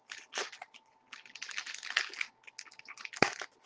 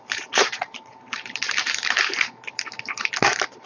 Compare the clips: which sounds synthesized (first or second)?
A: second